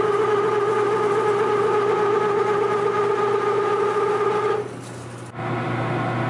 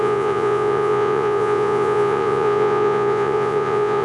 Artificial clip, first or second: second